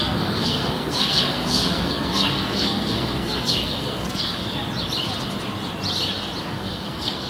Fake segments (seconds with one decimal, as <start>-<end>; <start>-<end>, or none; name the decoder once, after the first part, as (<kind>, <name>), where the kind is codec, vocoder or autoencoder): 0.0-4.4 (codec, SNAC); 6.4-7.3